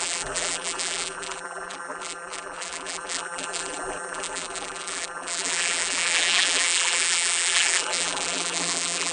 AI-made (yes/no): yes